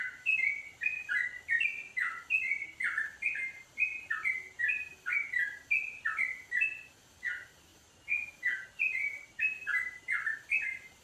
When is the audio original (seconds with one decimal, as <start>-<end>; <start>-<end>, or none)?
0.0-4.9; 5.4-11.0